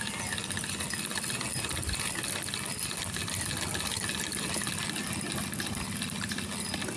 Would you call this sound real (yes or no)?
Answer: yes